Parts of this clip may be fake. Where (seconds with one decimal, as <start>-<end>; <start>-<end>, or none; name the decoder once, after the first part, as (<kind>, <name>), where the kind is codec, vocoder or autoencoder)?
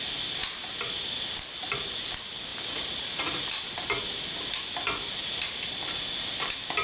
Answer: none